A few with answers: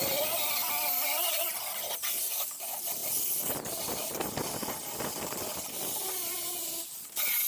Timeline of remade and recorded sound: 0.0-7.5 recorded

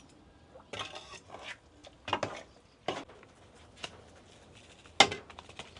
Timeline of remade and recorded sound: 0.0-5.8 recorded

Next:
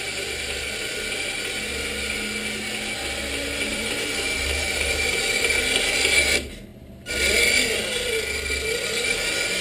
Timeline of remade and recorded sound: 0.0-3.7 recorded; 3.7-5.4 remade; 5.4-9.6 recorded

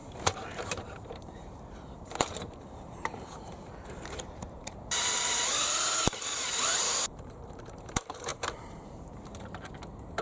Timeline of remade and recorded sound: 0.0-10.2 remade

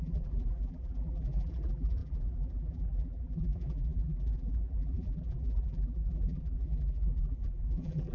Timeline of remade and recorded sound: 0.0-8.1 remade